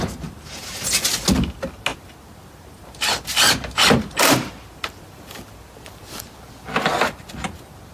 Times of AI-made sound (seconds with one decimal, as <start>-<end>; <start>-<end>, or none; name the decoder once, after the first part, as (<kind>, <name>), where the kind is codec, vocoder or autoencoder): none